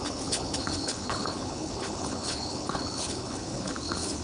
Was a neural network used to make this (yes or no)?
yes